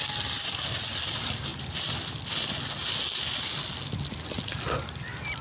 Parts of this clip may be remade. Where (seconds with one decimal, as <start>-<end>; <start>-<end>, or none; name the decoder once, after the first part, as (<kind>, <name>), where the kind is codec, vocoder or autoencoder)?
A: none